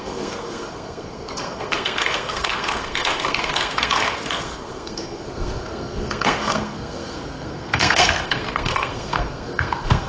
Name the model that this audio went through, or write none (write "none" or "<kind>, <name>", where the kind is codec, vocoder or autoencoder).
codec, SNAC